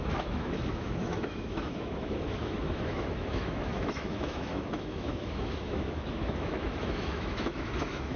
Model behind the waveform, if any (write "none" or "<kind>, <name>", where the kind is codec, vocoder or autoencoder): autoencoder, DAC-VAE